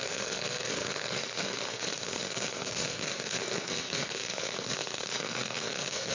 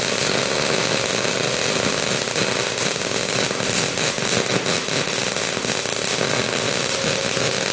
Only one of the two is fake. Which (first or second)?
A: first